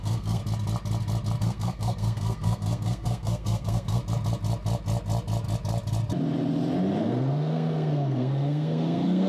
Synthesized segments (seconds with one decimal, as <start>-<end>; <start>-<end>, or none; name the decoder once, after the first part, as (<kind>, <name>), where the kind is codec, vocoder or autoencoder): 0.0-0.4 (codec, SNAC); 1.4-4.0; 7.0-9.3